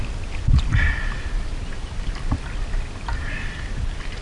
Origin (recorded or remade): recorded